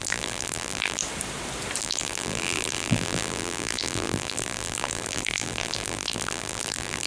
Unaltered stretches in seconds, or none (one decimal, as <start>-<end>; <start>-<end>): 1.0-1.8